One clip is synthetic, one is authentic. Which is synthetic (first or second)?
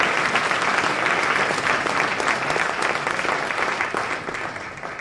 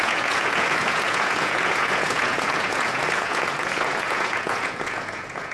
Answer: second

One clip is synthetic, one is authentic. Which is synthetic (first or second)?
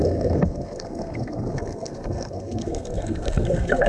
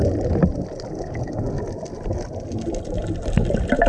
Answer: first